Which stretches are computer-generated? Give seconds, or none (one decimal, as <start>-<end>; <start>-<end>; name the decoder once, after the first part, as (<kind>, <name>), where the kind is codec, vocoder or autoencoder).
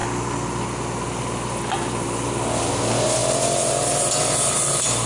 none